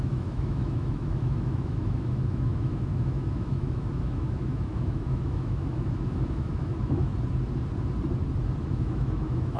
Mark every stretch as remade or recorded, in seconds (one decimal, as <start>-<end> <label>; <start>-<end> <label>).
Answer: 0.0-7.1 remade; 7.1-8.6 recorded; 8.6-9.6 remade